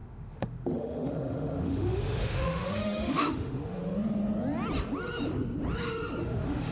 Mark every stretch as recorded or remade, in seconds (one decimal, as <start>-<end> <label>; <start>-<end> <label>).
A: 0.0-3.8 remade; 3.8-6.2 recorded; 6.2-6.7 remade